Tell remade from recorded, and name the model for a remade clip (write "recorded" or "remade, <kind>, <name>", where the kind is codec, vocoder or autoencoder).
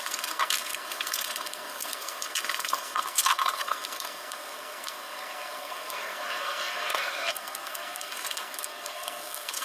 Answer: remade, codec, SNAC